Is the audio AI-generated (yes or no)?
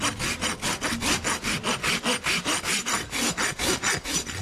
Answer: no